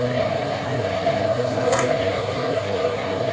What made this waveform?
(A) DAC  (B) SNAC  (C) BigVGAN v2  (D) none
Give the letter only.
B